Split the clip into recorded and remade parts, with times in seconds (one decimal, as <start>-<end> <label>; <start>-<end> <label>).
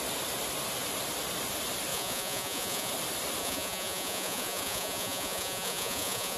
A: 0.0-1.9 recorded; 1.9-2.9 remade; 2.9-3.4 recorded; 3.4-6.4 remade